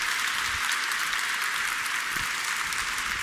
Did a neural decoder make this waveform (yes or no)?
no